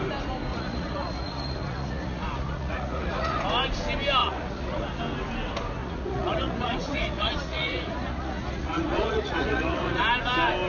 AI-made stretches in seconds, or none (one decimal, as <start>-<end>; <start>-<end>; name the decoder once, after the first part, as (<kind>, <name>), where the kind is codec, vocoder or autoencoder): 0.5-3.4 (vocoder, Vocos); 4.2-5.0; 5.8-10.0